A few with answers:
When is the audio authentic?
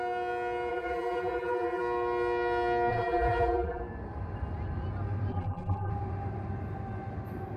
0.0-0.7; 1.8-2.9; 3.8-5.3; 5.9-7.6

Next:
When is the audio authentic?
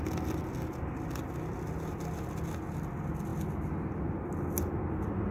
0.0-5.3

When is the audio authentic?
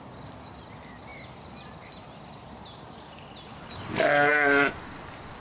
0.0-5.4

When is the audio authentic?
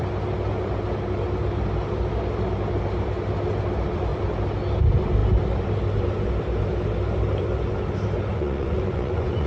0.0-8.3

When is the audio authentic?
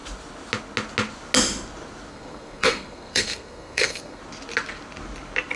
0.0-2.1; 4.2-5.6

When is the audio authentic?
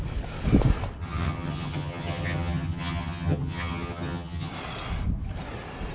0.0-1.0; 4.5-5.9